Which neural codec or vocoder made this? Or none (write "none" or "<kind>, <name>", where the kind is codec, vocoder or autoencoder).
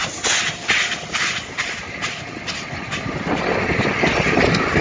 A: none